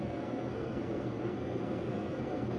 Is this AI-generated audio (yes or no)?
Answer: yes